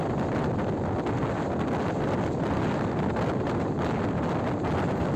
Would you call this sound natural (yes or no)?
yes